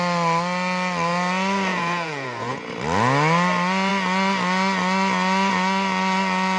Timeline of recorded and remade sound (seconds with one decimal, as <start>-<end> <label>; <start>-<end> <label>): 0.0-1.7 recorded; 1.7-2.7 remade; 2.7-6.6 recorded